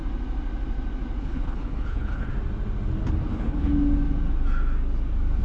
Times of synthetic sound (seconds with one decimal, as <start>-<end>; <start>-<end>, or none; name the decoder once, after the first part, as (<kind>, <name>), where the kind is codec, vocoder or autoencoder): 1.2-2.3 (codec, HILCodec); 3.3-3.7